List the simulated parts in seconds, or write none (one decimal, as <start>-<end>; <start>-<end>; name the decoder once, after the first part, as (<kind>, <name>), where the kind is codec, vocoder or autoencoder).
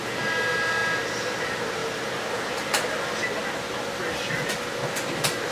none